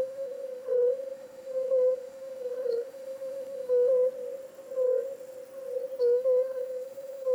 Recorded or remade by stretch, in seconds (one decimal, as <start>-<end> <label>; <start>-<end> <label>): 0.0-3.9 remade; 3.9-6.0 recorded; 6.0-7.3 remade